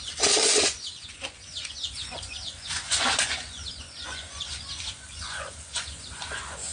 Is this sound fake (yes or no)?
yes